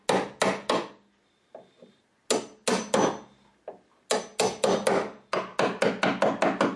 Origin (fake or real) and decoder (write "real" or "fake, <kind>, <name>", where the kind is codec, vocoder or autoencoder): real